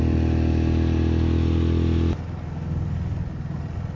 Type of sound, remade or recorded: recorded